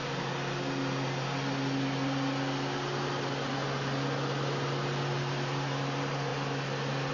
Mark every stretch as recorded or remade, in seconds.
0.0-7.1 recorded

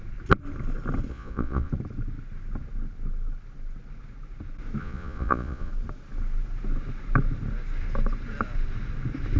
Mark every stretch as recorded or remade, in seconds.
0.0-1.1 recorded; 1.1-1.7 remade; 1.7-4.8 recorded; 4.8-5.7 remade; 5.7-9.4 recorded

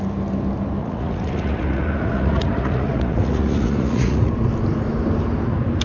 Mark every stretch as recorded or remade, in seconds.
0.0-0.8 recorded; 0.8-4.3 remade; 4.3-5.8 recorded

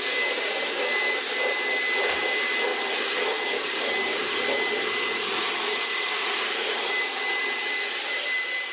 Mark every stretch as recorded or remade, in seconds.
0.0-5.1 recorded; 5.1-6.9 remade; 6.9-8.7 recorded